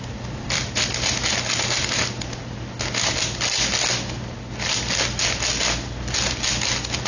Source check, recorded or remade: recorded